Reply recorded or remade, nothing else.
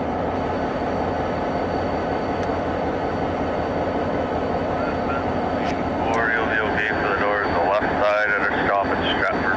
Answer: recorded